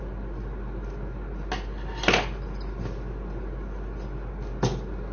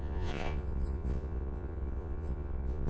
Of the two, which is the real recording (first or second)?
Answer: first